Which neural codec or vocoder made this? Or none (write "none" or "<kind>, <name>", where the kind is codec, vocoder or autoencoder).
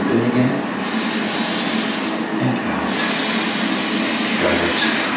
none